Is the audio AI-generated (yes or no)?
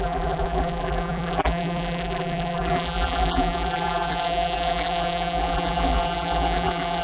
yes